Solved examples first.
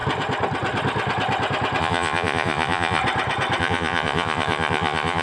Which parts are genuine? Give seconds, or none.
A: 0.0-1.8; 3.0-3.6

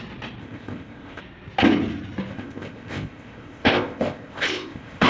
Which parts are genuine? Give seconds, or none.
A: 0.0-0.4; 1.2-2.3

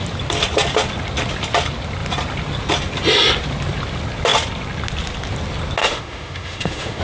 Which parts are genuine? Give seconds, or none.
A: 0.0-5.8

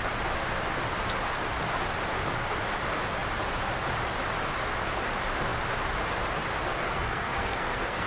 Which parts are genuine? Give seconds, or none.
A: 0.0-6.7

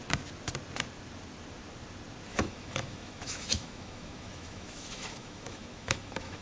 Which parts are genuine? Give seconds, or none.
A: 0.0-2.3